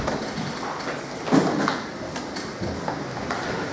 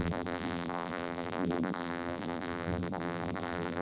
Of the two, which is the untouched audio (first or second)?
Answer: first